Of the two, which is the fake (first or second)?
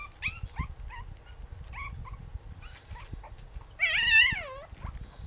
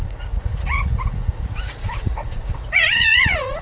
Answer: second